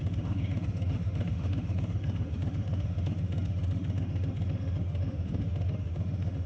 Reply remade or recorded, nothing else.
remade